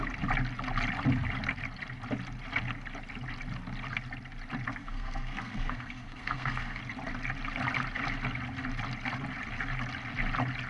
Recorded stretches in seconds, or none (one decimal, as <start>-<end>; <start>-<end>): 0.0-4.8; 6.8-10.7